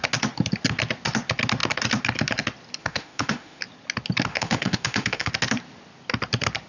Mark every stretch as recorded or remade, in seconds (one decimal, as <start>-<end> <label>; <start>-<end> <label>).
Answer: 0.0-2.8 recorded; 2.8-3.6 remade; 3.6-4.3 recorded; 4.3-5.3 remade; 5.3-6.7 recorded